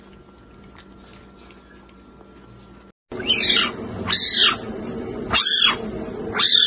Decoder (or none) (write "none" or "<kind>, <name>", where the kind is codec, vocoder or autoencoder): none